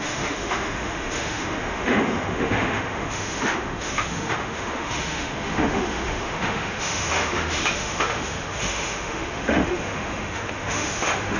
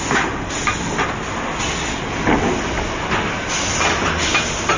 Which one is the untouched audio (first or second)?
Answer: second